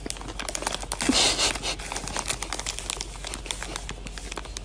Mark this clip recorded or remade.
recorded